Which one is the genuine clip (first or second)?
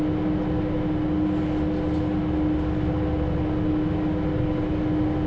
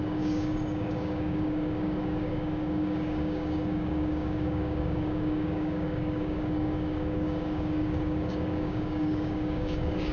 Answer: first